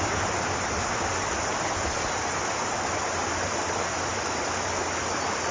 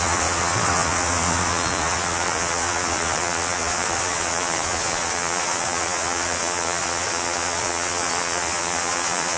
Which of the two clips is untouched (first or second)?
first